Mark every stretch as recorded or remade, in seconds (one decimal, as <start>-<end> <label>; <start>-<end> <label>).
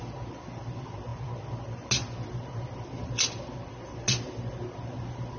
0.0-5.4 recorded